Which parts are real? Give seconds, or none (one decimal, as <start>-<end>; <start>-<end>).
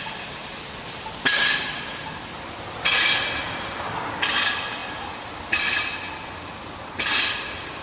0.0-7.8